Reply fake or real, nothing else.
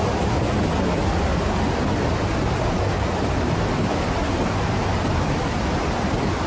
real